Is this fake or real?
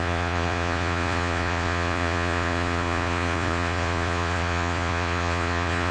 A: fake